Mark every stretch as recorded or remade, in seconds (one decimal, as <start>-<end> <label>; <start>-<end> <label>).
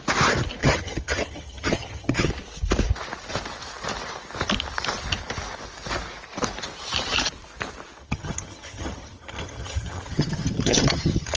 0.0-0.6 recorded; 0.6-2.3 remade; 2.3-8.0 recorded; 8.0-11.4 remade